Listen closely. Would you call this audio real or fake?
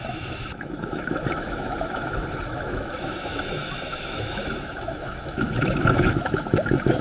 fake